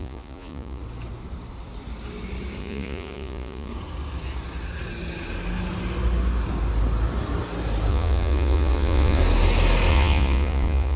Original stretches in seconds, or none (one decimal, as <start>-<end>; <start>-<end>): 0.8-2.6; 3.7-7.9; 9.2-9.9

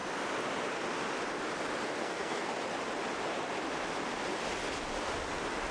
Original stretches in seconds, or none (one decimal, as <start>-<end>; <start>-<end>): 0.0-2.0; 2.5-5.7

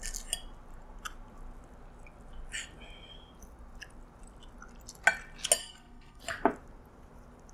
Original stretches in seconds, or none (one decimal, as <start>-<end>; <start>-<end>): 0.0-5.6; 6.2-7.5

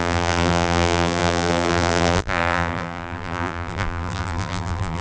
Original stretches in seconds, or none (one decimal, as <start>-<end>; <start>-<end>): none

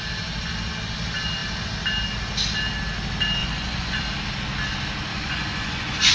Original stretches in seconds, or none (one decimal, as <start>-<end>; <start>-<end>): 0.0-3.4; 4.0-5.1